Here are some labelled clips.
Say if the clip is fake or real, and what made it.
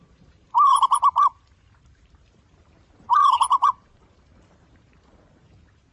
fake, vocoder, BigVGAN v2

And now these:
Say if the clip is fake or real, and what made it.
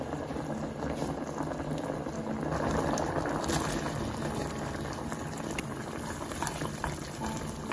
real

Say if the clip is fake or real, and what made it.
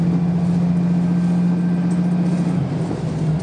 real